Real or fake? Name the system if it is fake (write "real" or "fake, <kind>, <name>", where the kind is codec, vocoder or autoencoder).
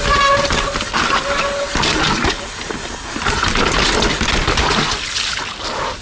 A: real